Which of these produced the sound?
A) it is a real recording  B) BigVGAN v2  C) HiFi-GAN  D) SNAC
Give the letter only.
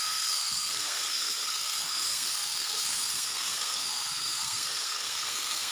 D